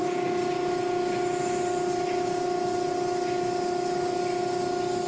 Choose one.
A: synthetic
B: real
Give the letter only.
B